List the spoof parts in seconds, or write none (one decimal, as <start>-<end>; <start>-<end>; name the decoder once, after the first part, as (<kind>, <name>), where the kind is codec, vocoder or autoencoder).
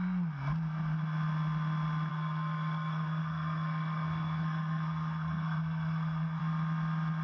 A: 2.1-6.4 (codec, SNAC)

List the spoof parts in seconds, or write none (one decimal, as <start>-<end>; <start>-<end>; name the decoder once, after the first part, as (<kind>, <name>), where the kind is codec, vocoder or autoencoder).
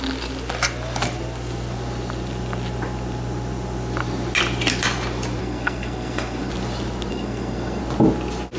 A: 5.4-6.5 (codec, SNAC); 7.1-7.8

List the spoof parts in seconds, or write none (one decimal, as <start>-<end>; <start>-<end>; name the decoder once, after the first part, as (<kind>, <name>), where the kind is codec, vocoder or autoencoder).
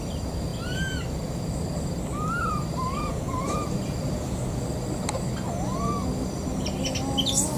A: none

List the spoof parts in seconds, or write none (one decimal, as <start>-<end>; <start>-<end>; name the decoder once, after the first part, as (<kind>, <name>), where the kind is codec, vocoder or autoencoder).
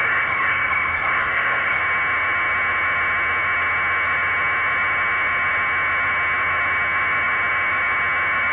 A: 0.0-1.8 (codec, SNAC)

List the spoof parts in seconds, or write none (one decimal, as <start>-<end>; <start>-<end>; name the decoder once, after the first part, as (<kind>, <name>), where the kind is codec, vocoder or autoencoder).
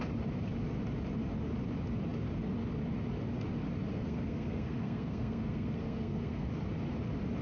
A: 3.9-6.5 (codec, SNAC)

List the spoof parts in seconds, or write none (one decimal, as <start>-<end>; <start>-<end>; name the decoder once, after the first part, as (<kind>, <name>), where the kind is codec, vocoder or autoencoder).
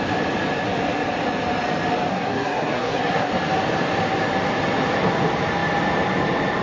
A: 2.1-3.3 (codec, SNAC)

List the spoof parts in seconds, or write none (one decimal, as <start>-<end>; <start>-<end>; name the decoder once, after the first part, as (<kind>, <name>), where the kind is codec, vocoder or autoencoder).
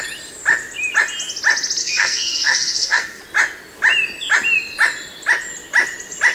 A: 1.8-3.2 (codec, SNAC)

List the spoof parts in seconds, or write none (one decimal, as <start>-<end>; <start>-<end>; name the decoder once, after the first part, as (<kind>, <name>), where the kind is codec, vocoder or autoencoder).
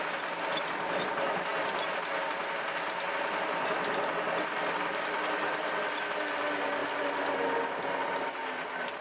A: none